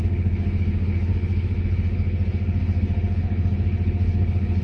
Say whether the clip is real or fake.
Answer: fake